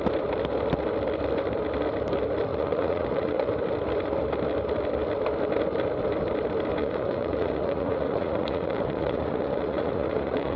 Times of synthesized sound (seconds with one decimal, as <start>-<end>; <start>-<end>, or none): 2.5-3.5; 6.8-10.6